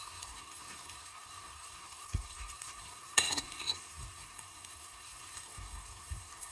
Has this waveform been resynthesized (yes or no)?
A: yes